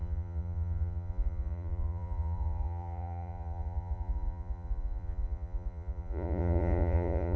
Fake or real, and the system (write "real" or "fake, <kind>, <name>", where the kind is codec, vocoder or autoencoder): fake, vocoder, Vocos